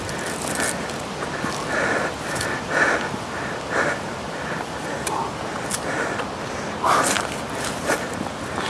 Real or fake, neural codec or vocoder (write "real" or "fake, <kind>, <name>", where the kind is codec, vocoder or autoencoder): real